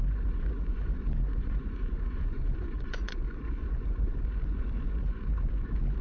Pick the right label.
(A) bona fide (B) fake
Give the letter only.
B